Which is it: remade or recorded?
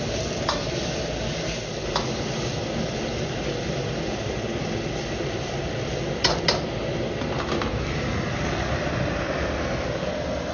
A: recorded